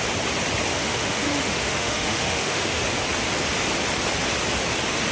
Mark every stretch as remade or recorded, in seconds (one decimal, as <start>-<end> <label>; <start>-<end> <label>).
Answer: 0.0-0.7 recorded; 0.7-2.8 remade; 2.8-5.1 recorded